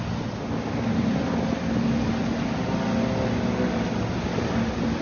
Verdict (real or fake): real